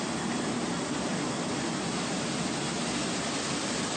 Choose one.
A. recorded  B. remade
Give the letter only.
A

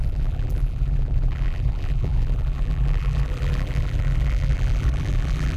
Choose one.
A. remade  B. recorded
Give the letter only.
A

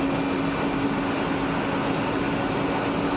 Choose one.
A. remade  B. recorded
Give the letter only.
B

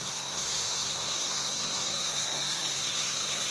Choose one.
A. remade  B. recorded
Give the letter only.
A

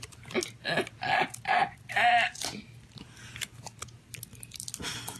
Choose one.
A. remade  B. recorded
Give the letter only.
B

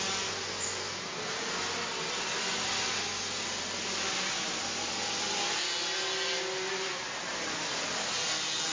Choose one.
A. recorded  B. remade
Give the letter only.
A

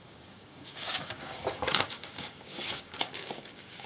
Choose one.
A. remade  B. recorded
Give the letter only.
A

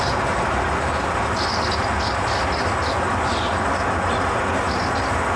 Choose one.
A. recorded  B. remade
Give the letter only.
A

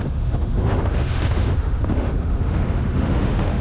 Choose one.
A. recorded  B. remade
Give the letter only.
B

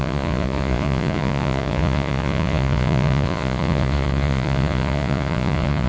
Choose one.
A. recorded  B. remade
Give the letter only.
B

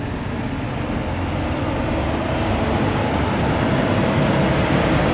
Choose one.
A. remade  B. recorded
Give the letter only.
B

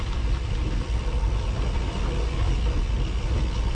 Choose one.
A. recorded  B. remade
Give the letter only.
A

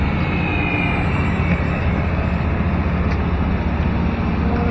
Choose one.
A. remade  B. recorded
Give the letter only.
B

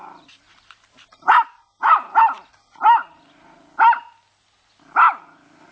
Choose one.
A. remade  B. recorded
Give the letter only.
B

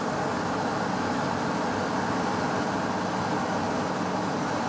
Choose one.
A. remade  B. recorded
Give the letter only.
B